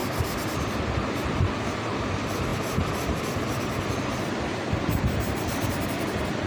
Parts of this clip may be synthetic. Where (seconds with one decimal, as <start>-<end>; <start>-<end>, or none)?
0.8-6.5